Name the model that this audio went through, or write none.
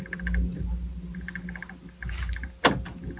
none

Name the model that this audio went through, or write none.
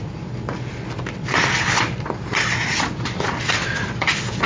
none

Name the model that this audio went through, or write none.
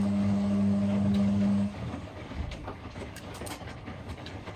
codec, DAC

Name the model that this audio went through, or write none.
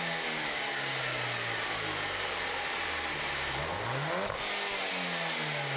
none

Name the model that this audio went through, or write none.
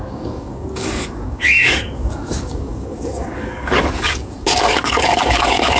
codec, DAC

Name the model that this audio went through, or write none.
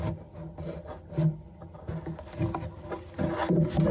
none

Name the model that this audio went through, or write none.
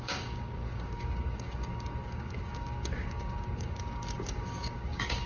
codec, DAC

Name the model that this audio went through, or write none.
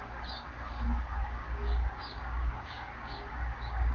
codec, DAC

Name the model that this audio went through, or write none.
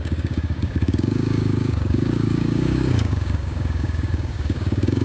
codec, DAC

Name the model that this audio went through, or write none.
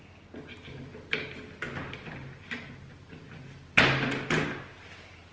none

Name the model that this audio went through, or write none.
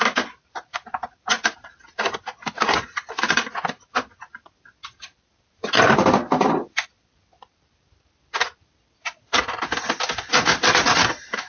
none